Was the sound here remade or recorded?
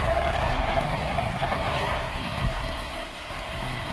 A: remade